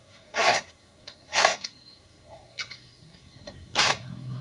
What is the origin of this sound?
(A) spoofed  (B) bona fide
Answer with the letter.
A